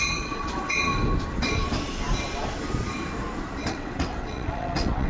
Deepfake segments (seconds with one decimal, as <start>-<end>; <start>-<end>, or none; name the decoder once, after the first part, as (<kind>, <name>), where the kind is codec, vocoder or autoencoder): 0.0-0.9 (vocoder, WaveNeXt); 3.7-5.1